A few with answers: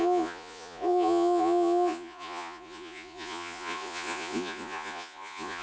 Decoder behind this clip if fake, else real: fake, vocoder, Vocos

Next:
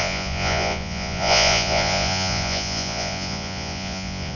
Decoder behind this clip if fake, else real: fake, vocoder, Vocos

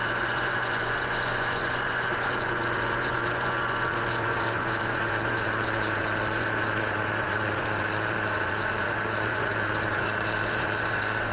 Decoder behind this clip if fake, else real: fake, vocoder, Vocos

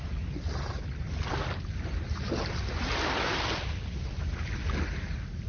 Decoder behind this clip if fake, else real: real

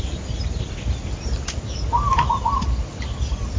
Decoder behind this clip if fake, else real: real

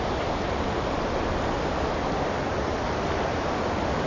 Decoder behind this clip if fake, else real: real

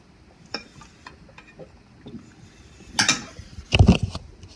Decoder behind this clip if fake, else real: real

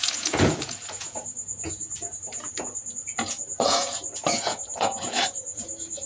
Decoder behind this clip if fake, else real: fake, vocoder, Vocos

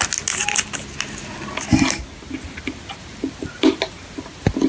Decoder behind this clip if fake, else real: real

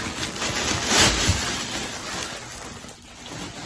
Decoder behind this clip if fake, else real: real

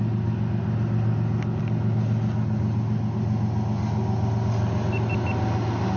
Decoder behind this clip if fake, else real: real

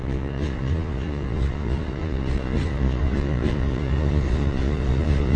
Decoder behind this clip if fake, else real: fake, vocoder, Vocos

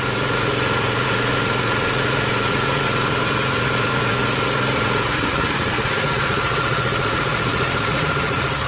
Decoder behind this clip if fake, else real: fake, vocoder, Vocos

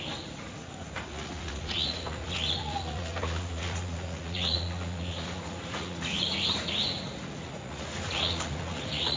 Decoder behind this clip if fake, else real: fake, vocoder, Vocos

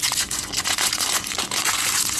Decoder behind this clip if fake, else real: fake, vocoder, Vocos